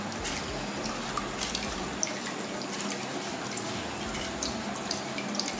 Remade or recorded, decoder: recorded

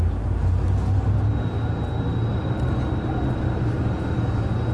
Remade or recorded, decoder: recorded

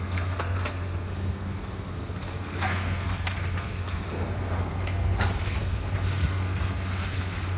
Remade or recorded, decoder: remade, codec, SNAC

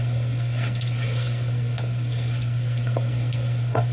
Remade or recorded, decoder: remade, codec, SNAC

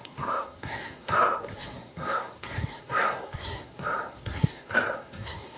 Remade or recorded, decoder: remade, codec, SNAC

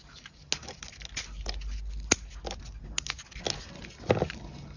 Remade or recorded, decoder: recorded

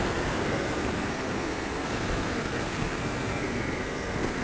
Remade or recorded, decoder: remade, codec, SNAC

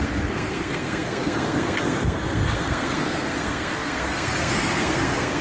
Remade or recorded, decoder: remade, codec, SNAC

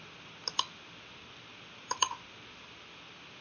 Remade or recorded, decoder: recorded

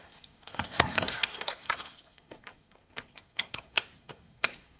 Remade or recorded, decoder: remade, codec, SNAC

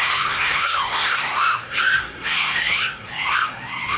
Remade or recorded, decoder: remade, codec, SNAC